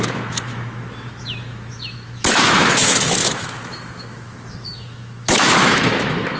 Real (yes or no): no